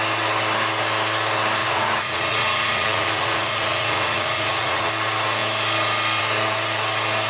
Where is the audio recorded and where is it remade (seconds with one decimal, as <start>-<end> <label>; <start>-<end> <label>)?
0.0-1.6 recorded; 1.6-4.9 remade; 4.9-7.3 recorded